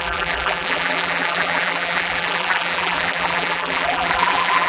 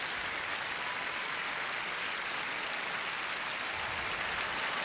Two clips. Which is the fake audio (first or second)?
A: first